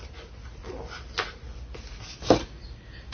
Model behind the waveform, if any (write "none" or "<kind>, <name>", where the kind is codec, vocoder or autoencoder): none